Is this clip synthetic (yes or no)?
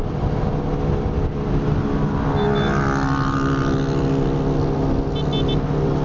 no